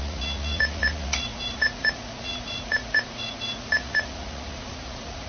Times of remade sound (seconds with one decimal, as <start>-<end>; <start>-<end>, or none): 0.0-5.3